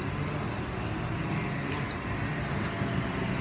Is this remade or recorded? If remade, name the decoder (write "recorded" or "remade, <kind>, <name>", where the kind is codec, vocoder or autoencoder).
recorded